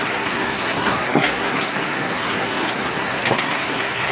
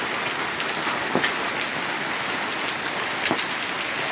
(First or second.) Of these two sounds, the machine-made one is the first